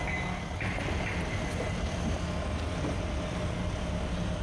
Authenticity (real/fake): real